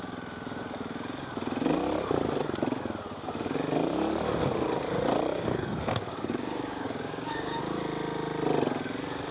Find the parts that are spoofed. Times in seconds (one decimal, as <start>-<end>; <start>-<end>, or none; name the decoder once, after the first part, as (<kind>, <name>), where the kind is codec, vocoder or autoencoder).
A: 5.3-7.6 (codec, DAC)

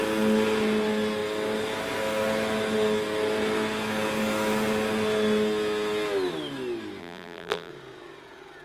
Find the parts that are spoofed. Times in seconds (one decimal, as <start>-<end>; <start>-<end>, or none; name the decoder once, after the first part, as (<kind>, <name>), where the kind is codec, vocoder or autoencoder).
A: 7.0-7.7 (vocoder, BigVGAN v2)

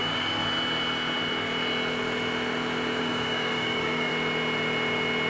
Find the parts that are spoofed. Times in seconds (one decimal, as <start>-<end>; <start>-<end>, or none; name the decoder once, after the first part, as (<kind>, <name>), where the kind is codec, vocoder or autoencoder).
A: 0.0-0.4 (codec, DAC); 3.0-4.1

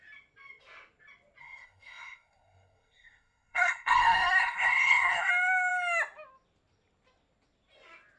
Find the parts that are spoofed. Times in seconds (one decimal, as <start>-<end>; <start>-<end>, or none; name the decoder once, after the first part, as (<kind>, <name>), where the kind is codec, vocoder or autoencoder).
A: 1.4-5.3 (codec, SNAC)